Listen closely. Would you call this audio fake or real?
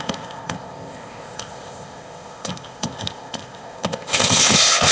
fake